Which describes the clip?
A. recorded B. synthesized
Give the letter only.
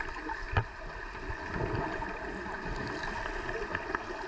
A